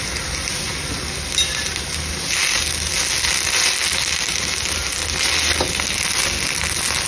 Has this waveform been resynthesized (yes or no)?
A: no